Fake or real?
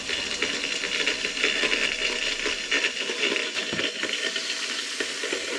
real